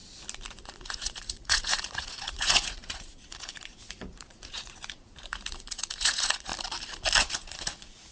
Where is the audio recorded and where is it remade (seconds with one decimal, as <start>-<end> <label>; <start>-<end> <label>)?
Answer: 0.0-0.5 recorded; 0.5-6.5 remade; 6.5-7.2 recorded; 7.2-8.1 remade